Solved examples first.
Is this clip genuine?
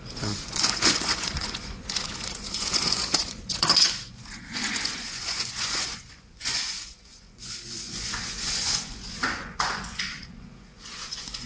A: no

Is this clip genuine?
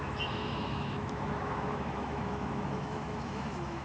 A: no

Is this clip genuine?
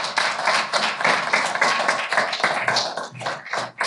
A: yes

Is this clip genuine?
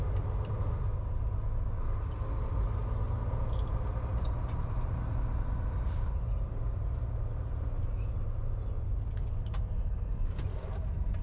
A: yes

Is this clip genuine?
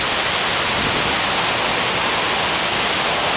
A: yes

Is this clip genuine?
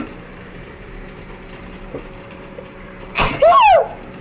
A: no